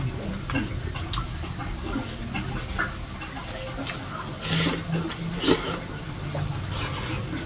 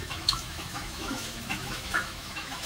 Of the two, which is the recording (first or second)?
first